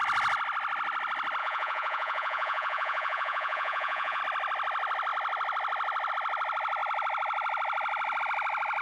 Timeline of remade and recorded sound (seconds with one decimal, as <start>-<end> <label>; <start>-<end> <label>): 0.0-1.4 recorded; 1.4-4.2 remade; 4.2-8.8 recorded